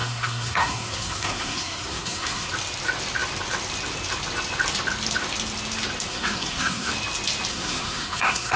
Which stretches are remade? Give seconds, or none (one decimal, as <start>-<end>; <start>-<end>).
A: 0.0-2.5; 6.1-6.9; 7.5-8.6